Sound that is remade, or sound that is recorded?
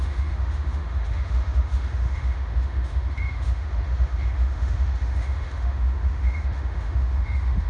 remade